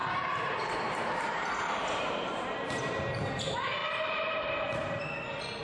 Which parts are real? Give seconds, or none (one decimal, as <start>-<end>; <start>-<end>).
3.4-3.8